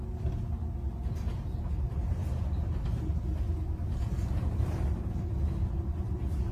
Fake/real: real